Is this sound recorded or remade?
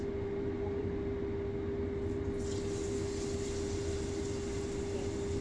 recorded